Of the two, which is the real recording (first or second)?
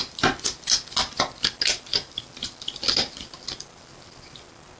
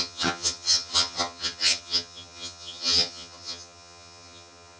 first